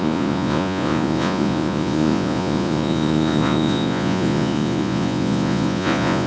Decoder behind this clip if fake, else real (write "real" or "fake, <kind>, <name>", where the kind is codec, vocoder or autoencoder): fake, vocoder, Vocos